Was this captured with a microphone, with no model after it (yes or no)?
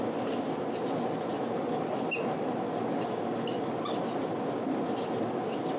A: yes